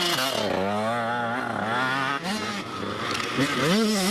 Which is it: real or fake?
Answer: real